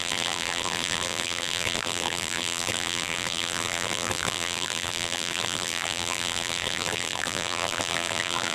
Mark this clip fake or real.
fake